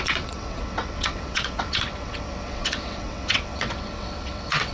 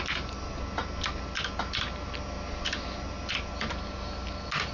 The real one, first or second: second